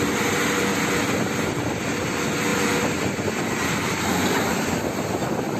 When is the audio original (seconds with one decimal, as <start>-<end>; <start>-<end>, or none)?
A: 0.0-5.6